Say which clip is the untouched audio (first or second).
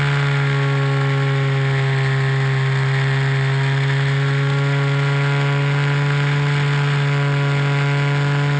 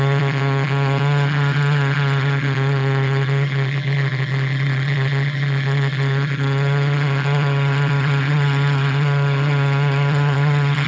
first